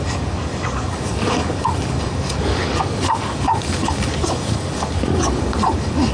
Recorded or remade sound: remade